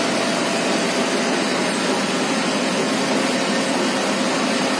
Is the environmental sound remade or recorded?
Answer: recorded